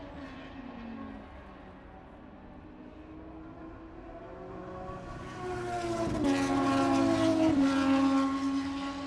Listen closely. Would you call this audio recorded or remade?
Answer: recorded